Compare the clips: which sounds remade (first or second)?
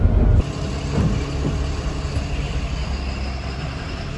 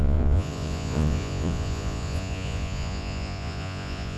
second